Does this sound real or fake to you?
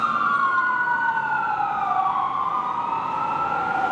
real